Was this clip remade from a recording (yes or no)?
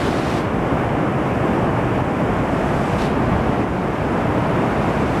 no